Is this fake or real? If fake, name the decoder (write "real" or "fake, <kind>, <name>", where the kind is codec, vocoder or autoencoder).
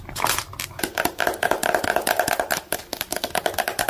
real